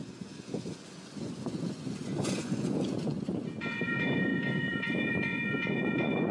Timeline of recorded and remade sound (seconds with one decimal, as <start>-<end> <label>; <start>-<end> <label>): 0.0-6.3 remade